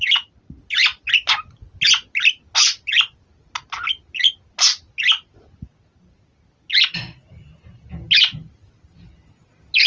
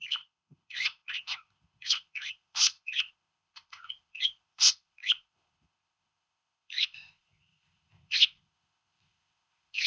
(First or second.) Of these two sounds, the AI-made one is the second